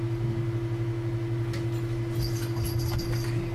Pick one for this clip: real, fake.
real